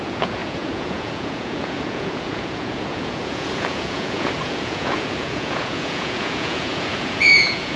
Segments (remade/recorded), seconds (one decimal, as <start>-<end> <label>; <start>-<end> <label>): 0.0-7.8 remade

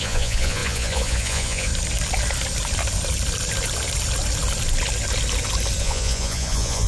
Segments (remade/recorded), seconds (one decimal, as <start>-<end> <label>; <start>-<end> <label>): 0.0-1.7 remade; 1.7-5.8 recorded; 5.8-6.9 remade

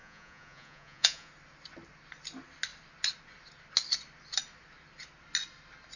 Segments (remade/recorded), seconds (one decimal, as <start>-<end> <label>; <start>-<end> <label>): 0.0-1.3 remade; 1.3-6.0 recorded

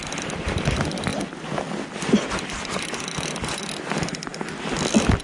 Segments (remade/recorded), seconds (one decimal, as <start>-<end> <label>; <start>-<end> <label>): 0.0-5.2 recorded